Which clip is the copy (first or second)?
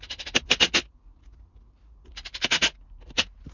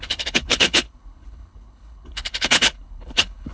second